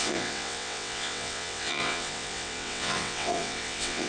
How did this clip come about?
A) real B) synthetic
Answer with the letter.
B